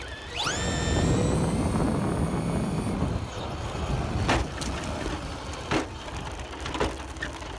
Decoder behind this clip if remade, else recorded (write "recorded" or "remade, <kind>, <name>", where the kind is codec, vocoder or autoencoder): recorded